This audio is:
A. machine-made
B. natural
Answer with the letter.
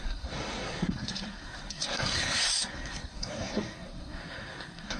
A